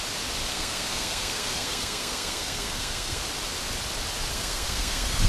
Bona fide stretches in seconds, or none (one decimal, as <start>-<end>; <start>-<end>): 0.0-0.5; 3.2-4.3